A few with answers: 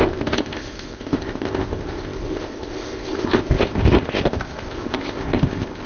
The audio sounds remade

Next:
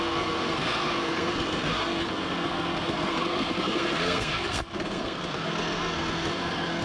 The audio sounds remade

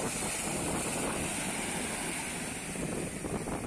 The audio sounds recorded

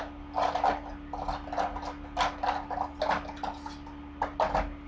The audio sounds recorded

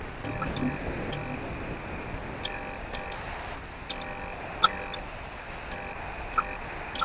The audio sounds recorded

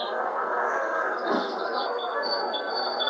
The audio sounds remade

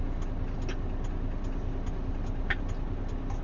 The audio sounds recorded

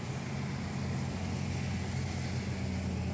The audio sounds recorded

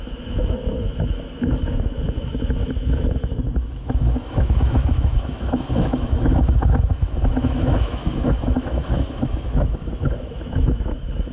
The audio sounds remade